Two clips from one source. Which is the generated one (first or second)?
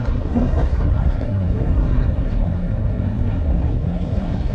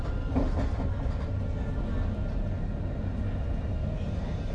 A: first